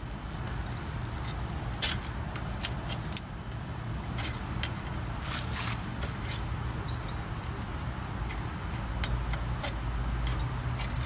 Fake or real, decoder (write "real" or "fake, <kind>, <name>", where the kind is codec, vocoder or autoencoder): real